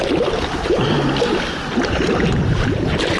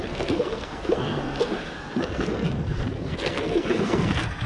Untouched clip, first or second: first